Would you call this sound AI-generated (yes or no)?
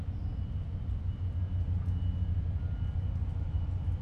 no